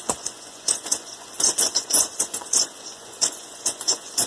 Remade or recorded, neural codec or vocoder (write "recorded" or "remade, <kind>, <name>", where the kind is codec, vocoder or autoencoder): remade, vocoder, Vocos